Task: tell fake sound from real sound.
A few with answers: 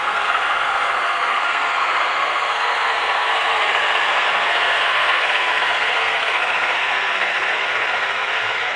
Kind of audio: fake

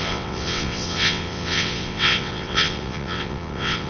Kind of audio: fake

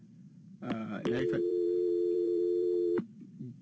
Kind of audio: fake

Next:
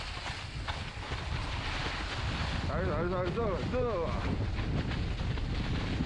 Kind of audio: real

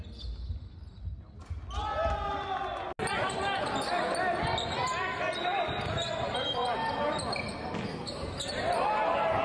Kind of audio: real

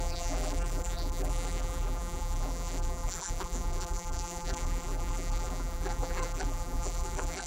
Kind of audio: fake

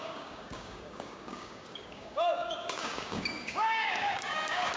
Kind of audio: fake